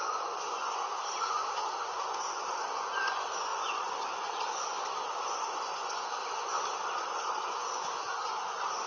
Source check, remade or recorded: remade